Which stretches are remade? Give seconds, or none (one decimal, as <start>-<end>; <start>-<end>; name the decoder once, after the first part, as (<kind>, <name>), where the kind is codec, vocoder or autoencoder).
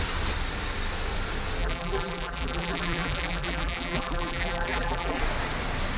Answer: 1.6-5.2 (vocoder, BigVGAN v2)